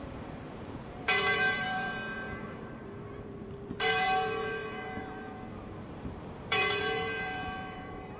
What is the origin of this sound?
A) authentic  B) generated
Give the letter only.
B